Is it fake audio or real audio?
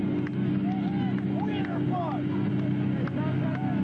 real